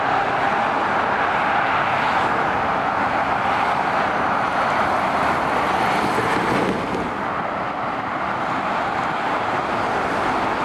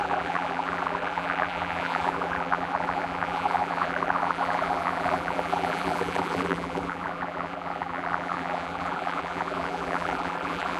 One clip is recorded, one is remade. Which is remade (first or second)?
second